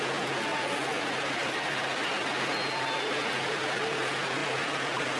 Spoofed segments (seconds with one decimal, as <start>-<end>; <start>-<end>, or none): none

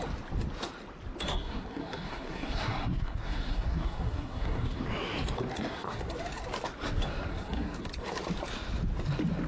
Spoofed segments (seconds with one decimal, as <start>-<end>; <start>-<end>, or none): 1.3-4.8; 5.5-6.0; 7.3-7.9